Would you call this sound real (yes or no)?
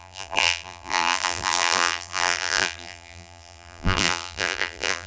no